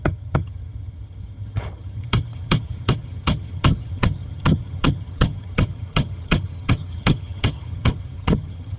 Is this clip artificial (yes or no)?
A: yes